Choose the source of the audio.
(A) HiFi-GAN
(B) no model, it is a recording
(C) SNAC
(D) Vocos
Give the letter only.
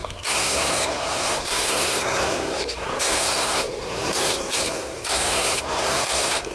C